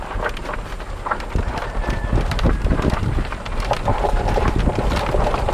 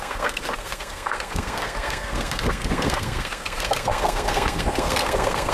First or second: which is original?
first